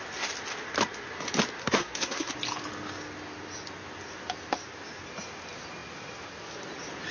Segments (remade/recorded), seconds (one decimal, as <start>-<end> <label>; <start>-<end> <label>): 0.0-1.6 recorded; 1.6-2.3 remade; 2.3-7.1 recorded